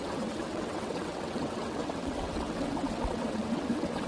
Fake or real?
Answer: fake